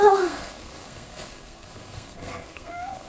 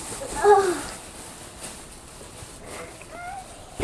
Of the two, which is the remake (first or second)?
first